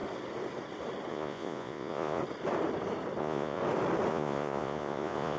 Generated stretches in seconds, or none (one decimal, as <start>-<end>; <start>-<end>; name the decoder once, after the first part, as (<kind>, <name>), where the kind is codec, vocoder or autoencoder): 1.1-2.2 (vocoder, Vocos); 3.2-3.6; 4.1-5.4